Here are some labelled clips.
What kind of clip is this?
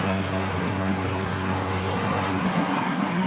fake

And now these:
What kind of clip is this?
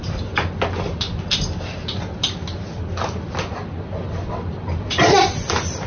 real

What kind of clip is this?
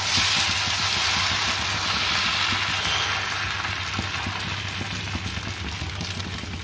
real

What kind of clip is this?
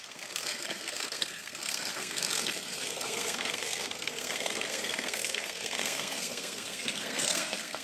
fake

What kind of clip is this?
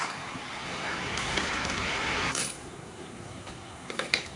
fake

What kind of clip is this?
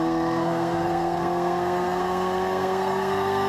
fake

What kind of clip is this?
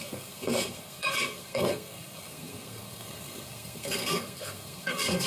fake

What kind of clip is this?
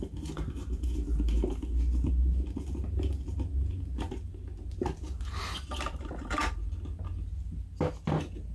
real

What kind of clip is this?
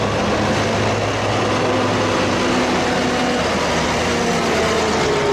real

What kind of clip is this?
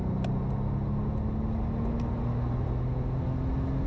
real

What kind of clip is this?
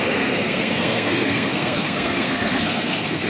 fake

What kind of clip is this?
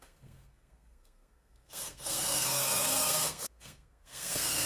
fake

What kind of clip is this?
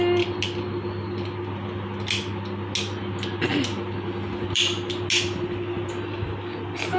real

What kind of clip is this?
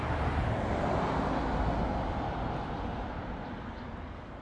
real